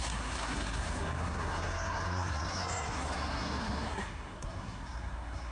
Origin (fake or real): fake